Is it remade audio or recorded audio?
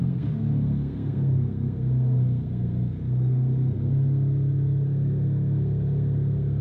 remade